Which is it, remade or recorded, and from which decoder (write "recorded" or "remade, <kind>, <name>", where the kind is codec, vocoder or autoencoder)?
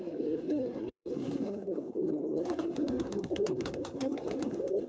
remade, codec, SNAC